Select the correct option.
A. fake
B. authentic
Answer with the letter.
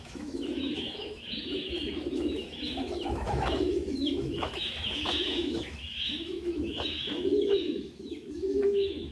A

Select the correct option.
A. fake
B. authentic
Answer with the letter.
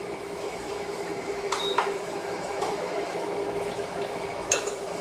A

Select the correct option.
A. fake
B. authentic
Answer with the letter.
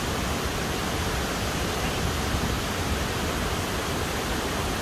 B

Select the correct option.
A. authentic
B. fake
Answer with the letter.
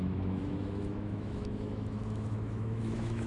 B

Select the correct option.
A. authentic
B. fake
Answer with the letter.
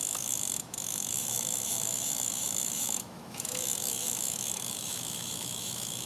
B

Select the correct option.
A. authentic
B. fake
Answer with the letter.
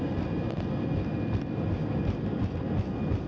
A